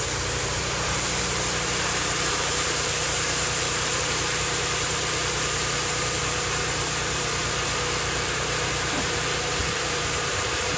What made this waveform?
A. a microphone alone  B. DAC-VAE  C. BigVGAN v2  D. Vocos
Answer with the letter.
C